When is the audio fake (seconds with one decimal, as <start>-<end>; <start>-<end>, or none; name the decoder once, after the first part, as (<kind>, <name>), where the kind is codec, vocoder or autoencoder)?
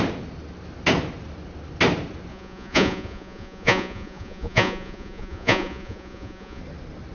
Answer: 2.3-6.6 (vocoder, Vocos)